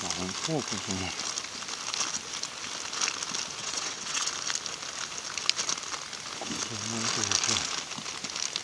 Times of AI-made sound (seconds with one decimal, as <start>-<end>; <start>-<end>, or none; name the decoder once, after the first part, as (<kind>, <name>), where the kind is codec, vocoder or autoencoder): 3.6-4.3 (vocoder, WaveNeXt)